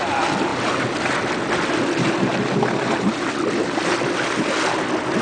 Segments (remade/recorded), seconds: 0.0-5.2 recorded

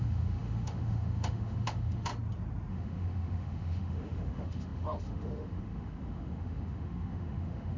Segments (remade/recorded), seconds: 0.0-2.1 remade; 2.1-2.7 recorded; 2.7-7.8 remade

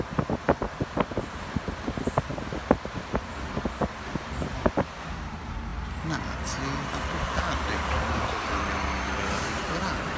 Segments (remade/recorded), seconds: 0.0-2.3 recorded; 2.3-4.7 remade; 4.7-10.2 recorded